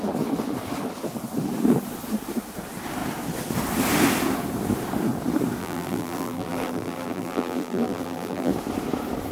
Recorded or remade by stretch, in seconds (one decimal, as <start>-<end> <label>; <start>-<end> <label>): 0.0-5.6 recorded; 5.6-8.5 remade; 8.5-9.3 recorded